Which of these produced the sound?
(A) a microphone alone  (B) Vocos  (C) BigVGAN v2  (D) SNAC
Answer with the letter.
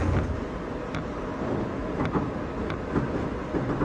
A